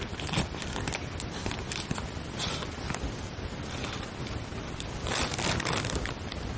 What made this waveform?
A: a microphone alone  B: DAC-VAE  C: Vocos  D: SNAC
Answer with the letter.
A